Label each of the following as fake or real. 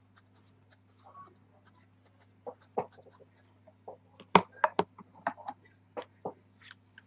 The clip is real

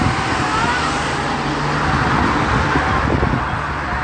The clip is real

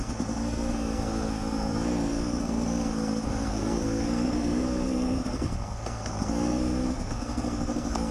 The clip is fake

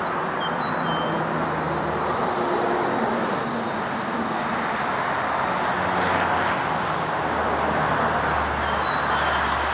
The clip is real